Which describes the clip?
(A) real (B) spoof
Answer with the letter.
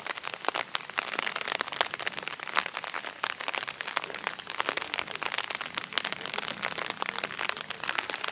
A